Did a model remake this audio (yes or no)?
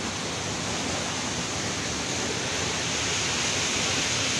no